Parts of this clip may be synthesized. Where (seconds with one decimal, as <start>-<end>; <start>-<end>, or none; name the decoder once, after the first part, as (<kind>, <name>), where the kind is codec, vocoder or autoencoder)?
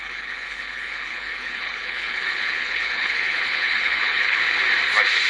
0.0-4.4 (codec, HILCodec)